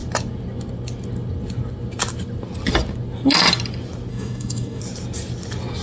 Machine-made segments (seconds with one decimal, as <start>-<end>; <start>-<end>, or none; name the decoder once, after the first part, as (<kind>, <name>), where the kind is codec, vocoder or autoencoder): 4.1-4.8 (codec, DAC)